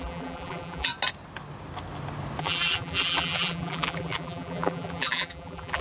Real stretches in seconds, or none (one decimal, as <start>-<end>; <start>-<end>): 0.9-2.4